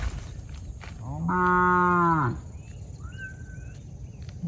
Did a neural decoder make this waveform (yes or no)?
no